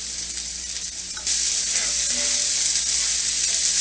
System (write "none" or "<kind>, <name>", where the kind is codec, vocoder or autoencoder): none